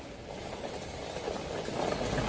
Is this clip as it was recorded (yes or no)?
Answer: yes